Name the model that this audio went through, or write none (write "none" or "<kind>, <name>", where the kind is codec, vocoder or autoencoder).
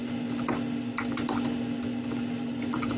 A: none